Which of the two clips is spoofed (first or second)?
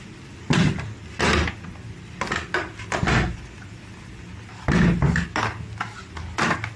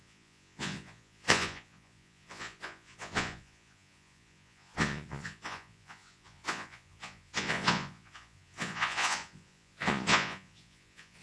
second